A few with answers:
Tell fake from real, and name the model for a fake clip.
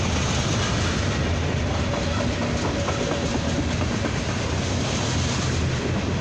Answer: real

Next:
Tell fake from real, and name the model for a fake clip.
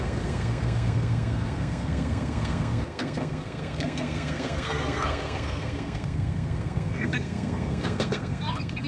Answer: fake, codec, SNAC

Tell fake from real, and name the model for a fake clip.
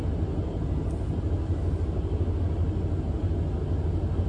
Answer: real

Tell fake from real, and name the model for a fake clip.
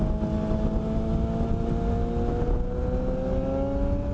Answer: real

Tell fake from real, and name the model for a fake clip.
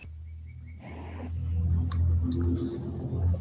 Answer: real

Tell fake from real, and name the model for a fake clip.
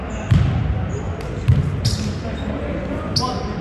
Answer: real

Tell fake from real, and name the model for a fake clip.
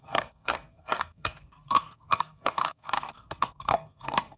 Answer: fake, codec, SNAC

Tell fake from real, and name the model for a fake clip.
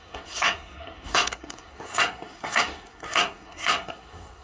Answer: fake, codec, SNAC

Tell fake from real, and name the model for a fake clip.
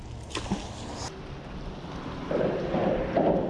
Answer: real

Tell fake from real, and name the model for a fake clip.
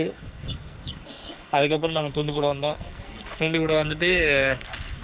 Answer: fake, codec, SNAC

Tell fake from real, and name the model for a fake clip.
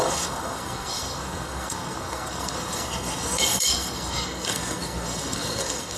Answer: fake, codec, SNAC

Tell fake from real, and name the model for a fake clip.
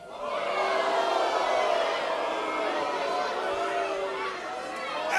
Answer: real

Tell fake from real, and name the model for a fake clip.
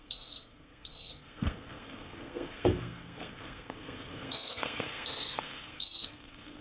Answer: fake, codec, SNAC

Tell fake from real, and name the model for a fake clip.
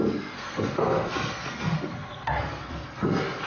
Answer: fake, codec, SNAC